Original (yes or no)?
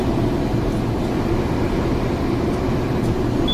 yes